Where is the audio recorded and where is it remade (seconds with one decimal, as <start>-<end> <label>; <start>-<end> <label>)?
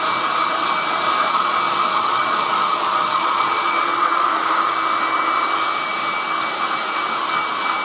0.0-1.2 recorded; 1.2-4.3 remade; 4.3-7.8 recorded